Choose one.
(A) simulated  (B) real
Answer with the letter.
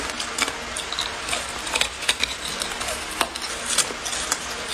B